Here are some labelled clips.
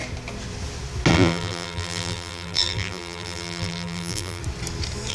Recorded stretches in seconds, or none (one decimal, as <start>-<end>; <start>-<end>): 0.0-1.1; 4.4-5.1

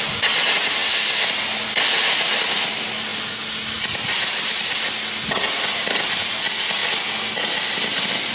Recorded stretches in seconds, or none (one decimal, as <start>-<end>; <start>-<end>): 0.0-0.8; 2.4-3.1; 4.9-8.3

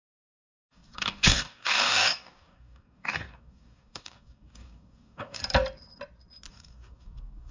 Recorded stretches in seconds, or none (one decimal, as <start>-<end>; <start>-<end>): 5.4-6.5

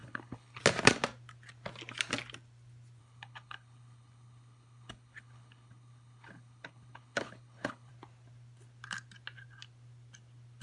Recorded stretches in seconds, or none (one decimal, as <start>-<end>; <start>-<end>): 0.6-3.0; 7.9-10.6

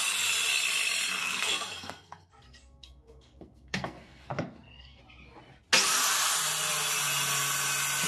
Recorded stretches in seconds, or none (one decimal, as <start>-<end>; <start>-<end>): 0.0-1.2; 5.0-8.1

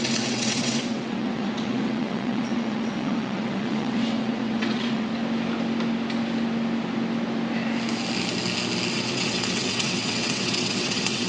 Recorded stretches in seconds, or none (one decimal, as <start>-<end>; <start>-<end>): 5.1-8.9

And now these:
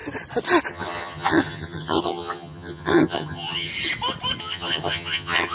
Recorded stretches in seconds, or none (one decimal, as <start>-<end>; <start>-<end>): 0.0-0.7; 3.7-4.4